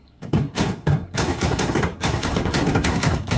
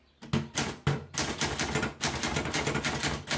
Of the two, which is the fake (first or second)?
first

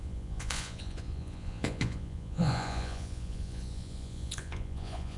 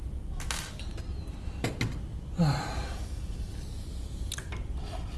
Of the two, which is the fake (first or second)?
first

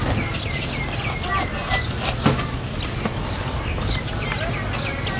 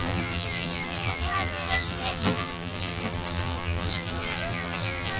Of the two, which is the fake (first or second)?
second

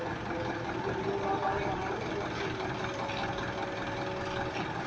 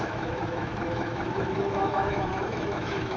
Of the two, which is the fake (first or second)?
second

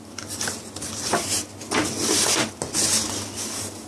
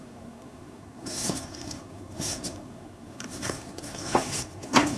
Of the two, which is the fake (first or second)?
second